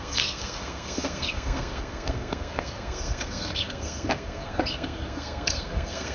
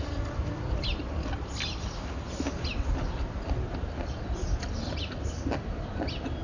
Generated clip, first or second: first